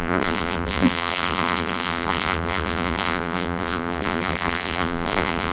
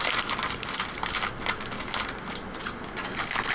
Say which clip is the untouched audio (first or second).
second